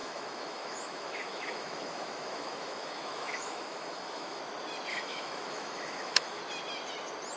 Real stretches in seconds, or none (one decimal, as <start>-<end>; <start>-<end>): 4.4-4.9; 6.4-7.4